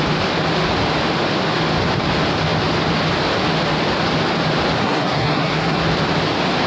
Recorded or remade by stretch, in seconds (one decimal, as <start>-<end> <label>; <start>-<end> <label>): 0.0-4.8 recorded; 4.8-5.8 remade; 5.8-6.7 recorded